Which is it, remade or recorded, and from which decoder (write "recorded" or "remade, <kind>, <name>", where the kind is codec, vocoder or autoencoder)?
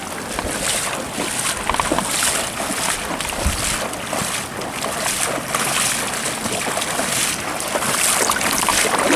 recorded